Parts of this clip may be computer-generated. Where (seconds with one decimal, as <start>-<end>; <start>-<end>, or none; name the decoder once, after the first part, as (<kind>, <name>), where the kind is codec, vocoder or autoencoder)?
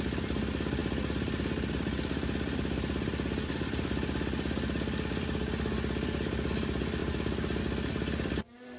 none